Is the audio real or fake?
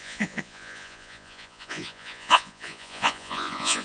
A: fake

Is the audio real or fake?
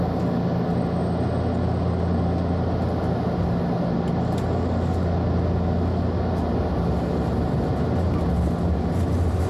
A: real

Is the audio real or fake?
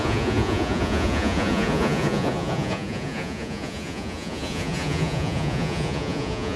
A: fake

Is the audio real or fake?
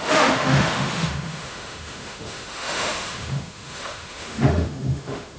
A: fake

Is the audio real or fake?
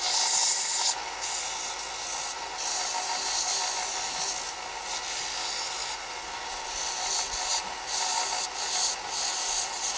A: real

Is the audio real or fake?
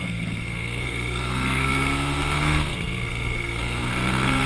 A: fake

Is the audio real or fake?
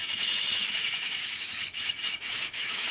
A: fake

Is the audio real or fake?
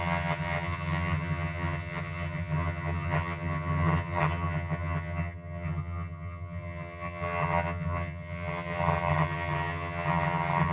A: fake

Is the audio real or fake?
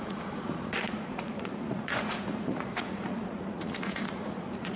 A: fake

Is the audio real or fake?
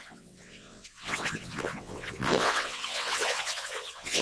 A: fake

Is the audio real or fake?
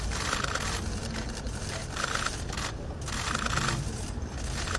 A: real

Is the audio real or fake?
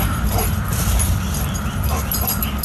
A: fake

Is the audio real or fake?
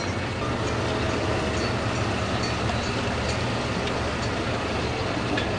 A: real